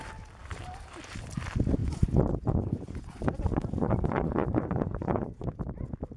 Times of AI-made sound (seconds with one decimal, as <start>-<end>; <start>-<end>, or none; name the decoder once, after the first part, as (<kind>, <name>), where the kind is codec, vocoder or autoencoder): 1.8-5.5 (vocoder, Vocos)